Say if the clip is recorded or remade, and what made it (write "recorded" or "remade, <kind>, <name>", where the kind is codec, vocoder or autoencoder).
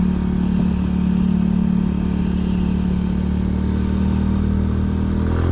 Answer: recorded